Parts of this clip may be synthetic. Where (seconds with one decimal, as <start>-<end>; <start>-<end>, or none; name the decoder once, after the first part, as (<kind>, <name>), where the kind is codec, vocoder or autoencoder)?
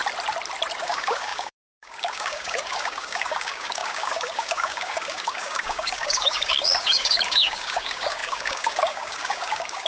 0.8-9.9 (codec, DAC)